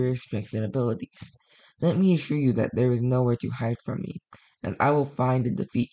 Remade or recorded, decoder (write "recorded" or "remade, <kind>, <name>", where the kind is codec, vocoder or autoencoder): recorded